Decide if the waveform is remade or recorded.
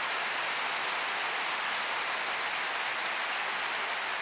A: recorded